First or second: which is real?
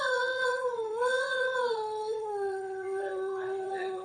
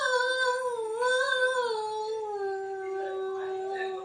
second